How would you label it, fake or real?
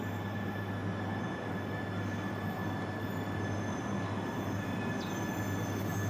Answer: real